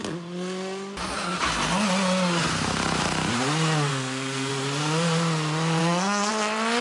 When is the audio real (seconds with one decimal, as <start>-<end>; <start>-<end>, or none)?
0.0-3.9; 4.5-5.8; 6.3-6.8